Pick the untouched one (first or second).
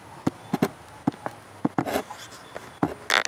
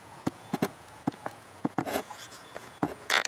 first